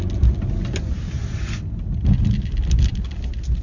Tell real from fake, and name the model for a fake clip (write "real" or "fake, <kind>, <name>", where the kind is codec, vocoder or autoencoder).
real